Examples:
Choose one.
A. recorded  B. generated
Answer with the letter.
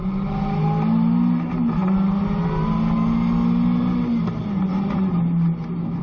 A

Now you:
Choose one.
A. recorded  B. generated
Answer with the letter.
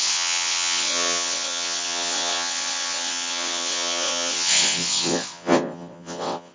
B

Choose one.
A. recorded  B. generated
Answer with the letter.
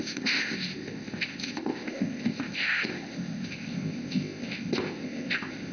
B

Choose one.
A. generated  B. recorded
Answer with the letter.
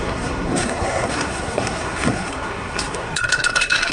A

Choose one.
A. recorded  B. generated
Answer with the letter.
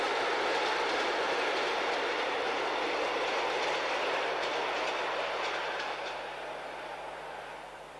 B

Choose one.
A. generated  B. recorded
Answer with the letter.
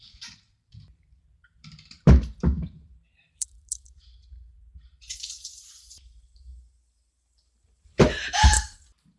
A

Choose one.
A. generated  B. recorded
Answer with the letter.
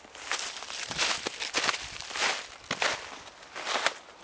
B